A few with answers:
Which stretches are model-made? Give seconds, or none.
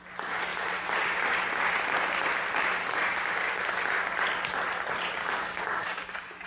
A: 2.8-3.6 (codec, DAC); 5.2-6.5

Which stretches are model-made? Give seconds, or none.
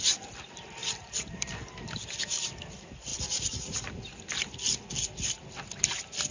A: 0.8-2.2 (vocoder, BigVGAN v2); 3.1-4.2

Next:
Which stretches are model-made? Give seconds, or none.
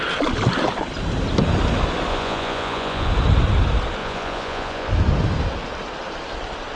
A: 2.1-3.1 (vocoder, Vocos); 4.0-4.9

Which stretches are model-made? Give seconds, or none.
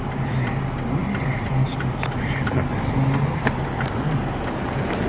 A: none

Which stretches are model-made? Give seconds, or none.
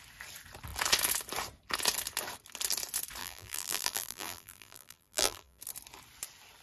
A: 3.2-5.6 (vocoder, BigVGAN v2)